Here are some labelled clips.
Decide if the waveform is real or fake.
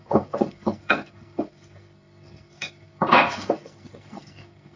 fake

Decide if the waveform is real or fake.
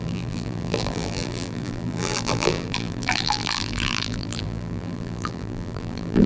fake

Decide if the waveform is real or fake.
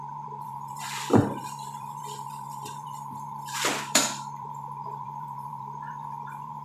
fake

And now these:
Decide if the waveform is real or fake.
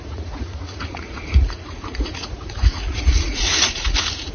fake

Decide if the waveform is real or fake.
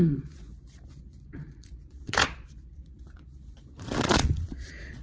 fake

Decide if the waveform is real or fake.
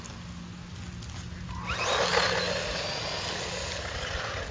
real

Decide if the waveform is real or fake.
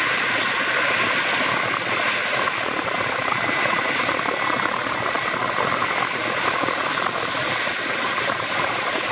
real